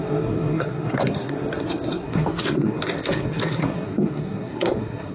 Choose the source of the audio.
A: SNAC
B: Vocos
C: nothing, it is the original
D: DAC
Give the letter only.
A